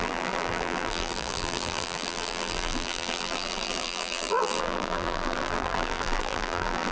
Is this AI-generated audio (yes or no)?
yes